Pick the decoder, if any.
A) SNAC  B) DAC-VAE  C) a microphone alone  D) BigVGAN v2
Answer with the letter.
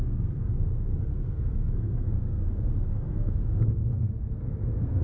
A